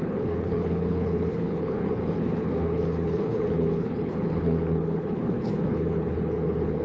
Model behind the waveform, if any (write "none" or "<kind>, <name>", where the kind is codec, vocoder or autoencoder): codec, HILCodec